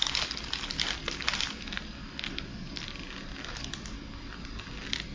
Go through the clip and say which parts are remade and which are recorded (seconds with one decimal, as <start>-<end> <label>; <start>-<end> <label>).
0.0-5.1 recorded